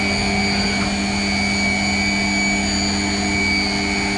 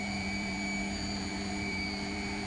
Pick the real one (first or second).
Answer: first